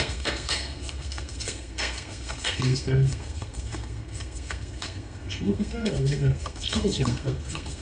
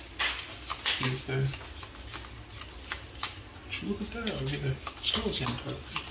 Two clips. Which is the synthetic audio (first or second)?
first